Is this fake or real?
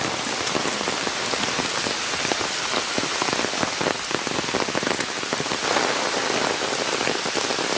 real